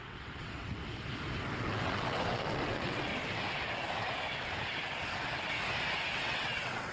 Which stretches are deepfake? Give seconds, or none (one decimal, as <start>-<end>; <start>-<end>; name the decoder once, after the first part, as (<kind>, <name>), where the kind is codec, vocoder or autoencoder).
0.0-0.8 (vocoder, WaveNeXt); 1.6-3.1; 6.1-6.9